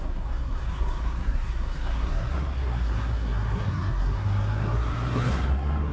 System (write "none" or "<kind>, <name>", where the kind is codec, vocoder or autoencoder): codec, SNAC